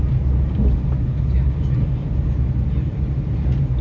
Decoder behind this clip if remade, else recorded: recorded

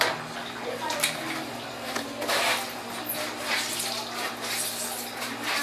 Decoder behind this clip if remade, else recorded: recorded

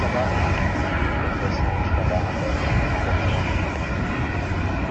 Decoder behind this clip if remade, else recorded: recorded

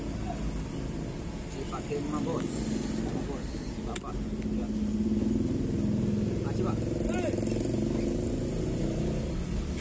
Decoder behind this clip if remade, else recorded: recorded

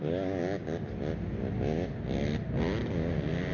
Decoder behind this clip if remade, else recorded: recorded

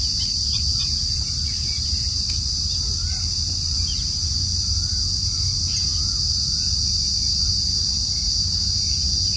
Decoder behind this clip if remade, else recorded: recorded